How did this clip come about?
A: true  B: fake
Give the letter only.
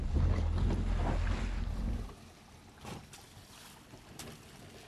A